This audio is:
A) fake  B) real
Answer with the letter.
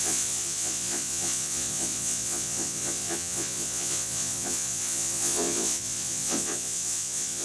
A